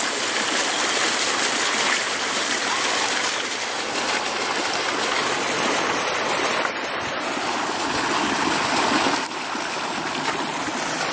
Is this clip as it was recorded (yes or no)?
yes